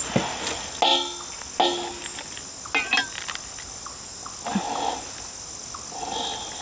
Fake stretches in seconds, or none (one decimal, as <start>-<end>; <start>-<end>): none